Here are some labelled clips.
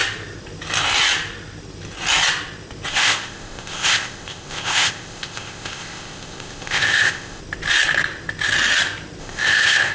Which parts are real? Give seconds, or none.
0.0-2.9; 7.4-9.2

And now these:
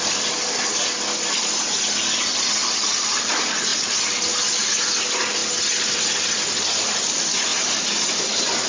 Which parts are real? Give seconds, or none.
0.0-8.7

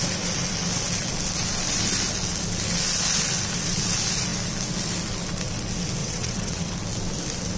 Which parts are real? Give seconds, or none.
0.0-6.0; 6.7-7.6